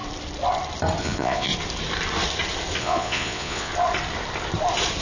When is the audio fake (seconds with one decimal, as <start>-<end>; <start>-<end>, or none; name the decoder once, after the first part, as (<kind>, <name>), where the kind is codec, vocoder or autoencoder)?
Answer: 1.0-1.5 (vocoder, Vocos); 2.8-3.7